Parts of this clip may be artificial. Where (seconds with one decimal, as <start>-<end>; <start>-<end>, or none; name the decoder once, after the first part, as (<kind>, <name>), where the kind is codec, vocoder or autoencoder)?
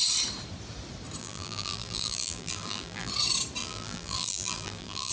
1.2-3.1 (vocoder, BigVGAN v2); 3.6-5.1